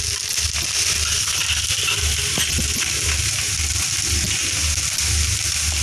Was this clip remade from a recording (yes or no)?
no